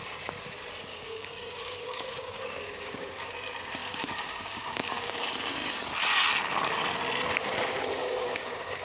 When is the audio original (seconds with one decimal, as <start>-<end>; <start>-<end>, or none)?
0.0-0.9; 3.3-3.8; 5.9-8.0